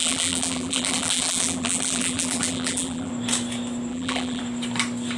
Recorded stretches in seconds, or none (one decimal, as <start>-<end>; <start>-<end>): 3.1-3.9; 4.4-5.2